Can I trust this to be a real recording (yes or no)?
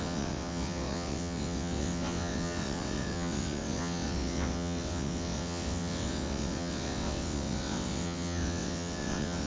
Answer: no